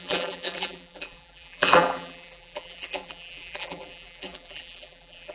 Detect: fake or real fake